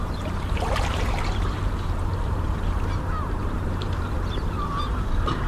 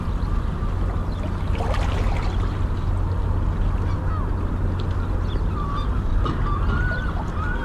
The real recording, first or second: second